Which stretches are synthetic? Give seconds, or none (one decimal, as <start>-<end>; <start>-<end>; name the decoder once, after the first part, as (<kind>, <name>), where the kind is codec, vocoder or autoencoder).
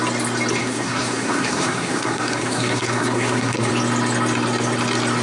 0.6-3.7 (codec, SNAC)